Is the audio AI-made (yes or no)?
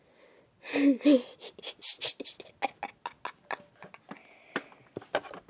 no